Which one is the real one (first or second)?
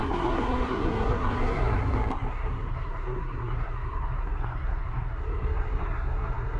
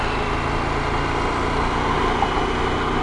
second